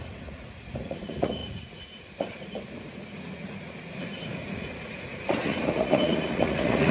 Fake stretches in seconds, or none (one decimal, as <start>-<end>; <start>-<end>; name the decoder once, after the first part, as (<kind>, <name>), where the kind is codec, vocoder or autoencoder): 0.0-6.9 (vocoder, Vocos)